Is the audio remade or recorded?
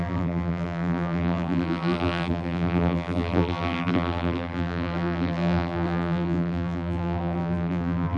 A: remade